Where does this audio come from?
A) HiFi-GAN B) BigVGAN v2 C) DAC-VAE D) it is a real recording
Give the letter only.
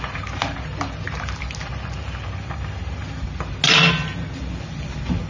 D